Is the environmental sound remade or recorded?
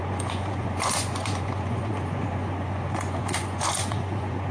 remade